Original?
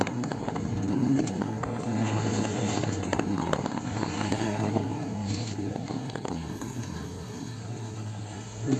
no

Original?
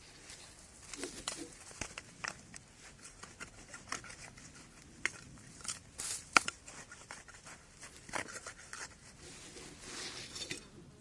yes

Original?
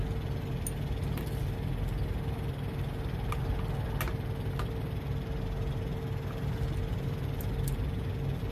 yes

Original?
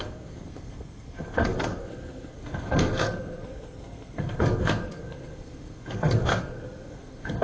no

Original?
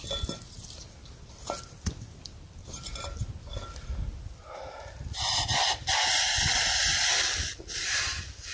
yes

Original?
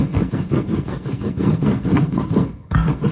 no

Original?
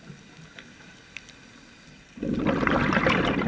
yes